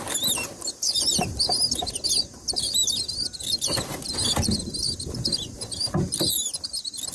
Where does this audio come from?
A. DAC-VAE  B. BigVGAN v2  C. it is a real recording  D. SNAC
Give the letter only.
C